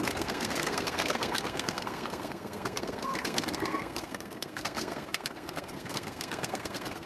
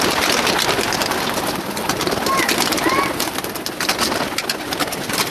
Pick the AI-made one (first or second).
first